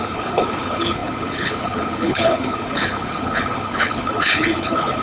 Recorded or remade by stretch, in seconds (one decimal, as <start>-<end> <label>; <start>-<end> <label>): 0.0-5.0 remade